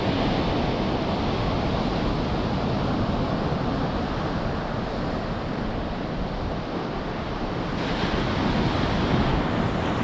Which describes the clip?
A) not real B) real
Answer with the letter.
B